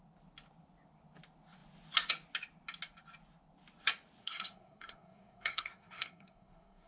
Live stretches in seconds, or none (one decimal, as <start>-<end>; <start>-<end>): 0.0-4.2